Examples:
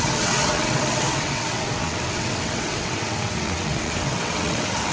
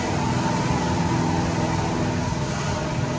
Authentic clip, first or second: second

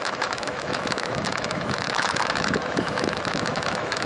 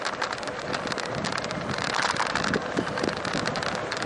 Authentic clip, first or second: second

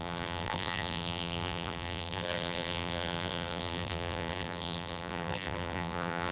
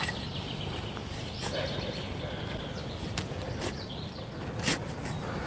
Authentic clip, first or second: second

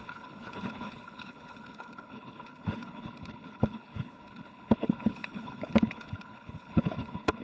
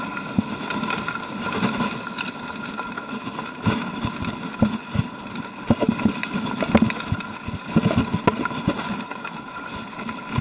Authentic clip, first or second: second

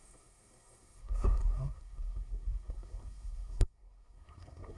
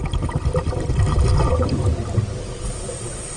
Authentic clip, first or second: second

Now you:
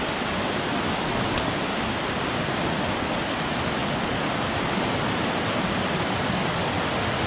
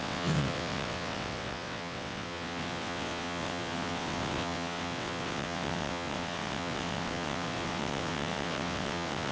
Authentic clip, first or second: first